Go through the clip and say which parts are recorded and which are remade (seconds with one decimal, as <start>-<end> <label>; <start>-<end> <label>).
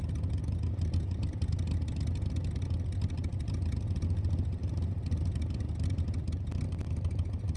0.0-7.6 recorded